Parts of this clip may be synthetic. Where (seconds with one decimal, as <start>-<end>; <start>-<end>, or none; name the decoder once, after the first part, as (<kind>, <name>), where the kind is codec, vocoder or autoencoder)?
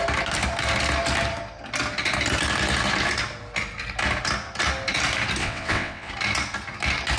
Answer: 5.4-6.1 (vocoder, WaveNeXt)